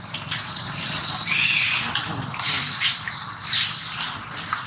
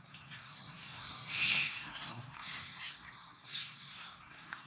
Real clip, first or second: first